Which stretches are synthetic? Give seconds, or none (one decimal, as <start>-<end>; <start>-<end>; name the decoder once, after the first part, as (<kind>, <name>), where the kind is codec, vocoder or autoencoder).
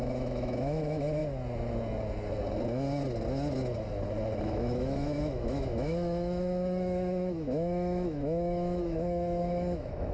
0.0-1.2 (autoencoder, DAC-VAE); 4.4-10.1